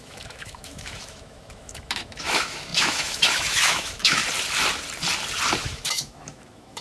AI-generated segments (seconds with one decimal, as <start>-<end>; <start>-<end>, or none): 0.0-4.2; 5.6-6.8